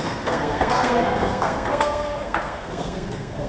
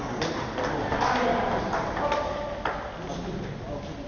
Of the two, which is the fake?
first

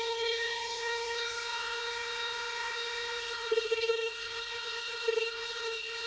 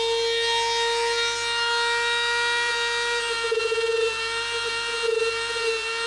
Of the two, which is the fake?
first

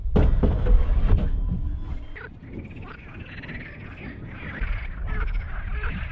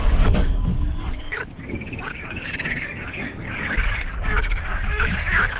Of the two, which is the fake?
second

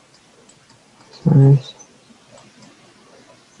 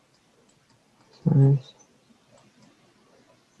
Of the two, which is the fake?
second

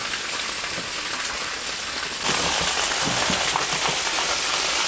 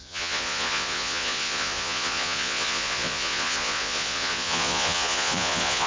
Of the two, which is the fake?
second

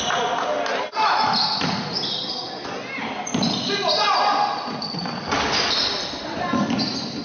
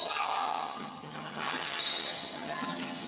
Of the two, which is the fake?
second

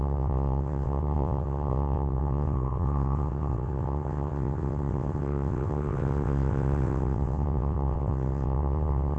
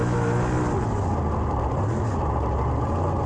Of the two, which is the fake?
first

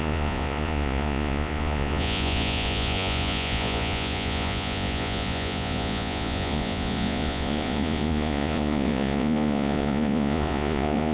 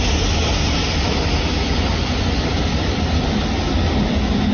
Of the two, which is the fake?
first